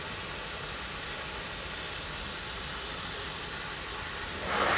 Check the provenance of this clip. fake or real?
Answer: real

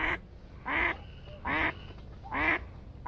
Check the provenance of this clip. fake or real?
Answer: real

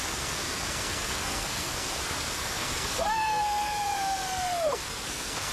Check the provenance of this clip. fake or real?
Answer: fake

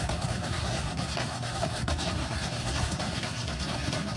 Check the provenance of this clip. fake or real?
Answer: fake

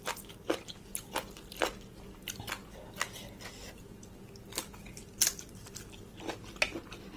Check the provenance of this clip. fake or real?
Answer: real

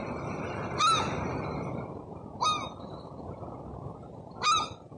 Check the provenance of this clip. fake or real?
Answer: real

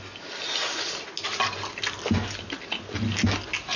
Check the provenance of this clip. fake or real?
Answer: real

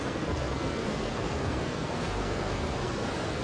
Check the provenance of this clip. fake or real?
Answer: fake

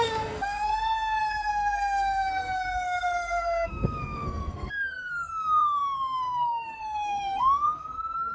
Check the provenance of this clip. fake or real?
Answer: fake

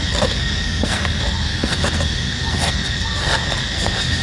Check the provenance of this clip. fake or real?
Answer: fake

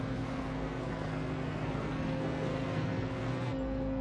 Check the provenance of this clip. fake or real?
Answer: fake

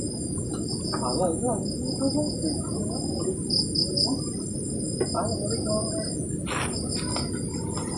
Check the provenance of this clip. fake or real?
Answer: real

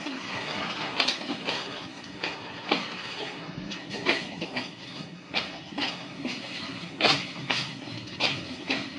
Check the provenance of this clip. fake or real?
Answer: fake